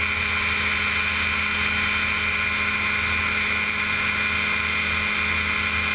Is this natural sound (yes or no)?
yes